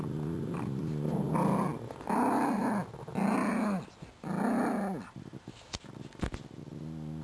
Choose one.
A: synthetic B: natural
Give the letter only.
B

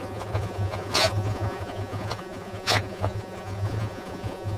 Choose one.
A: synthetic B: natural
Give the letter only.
A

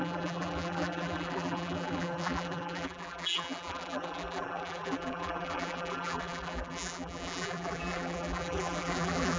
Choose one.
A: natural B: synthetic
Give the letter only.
B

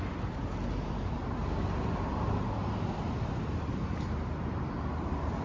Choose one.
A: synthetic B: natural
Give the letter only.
B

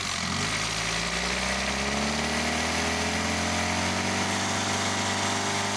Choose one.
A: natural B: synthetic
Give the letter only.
A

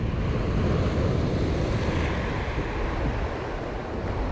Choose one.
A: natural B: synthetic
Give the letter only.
A